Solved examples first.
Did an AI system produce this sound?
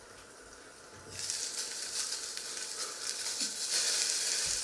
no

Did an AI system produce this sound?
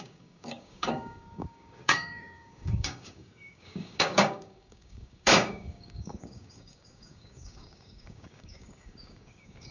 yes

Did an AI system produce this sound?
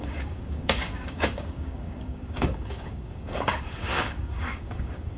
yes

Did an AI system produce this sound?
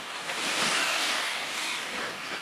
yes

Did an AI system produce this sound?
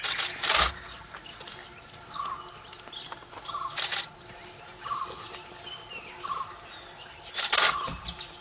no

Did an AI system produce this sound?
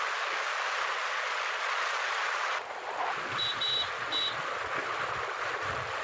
no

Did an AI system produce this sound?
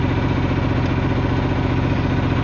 no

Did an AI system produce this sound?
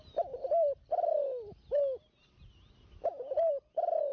no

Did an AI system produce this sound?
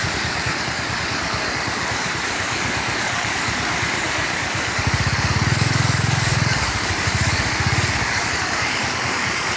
yes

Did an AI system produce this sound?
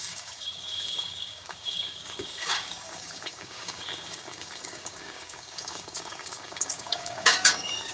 yes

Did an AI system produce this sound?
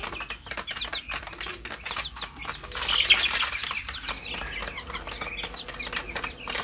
no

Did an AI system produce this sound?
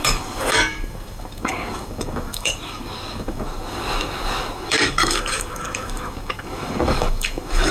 yes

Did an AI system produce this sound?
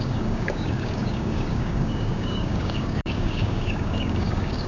yes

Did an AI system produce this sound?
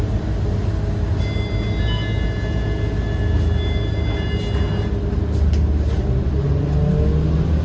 no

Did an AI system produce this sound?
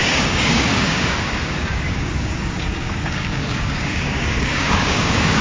yes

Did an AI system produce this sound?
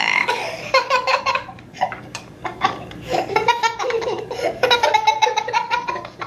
yes